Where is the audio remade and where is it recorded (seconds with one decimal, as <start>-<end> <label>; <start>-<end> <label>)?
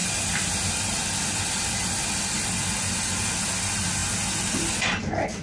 0.0-5.4 recorded